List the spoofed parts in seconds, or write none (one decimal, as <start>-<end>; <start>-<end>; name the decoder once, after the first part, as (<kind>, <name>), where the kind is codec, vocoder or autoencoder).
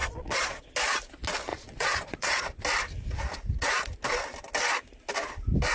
0.0-0.7 (vocoder, Vocos); 1.5-2.5